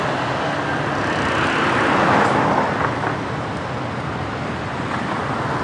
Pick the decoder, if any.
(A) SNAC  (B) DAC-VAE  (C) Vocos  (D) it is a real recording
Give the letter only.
D